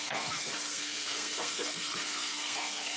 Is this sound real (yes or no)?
no